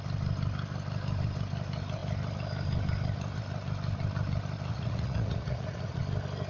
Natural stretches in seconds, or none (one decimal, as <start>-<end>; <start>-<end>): 0.0-4.7; 6.0-6.5